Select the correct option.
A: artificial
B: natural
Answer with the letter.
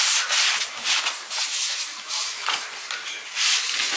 B